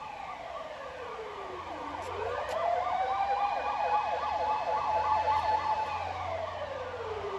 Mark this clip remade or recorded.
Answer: recorded